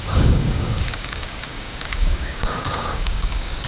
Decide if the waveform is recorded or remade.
remade